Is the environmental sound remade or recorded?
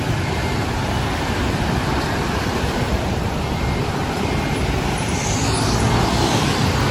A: recorded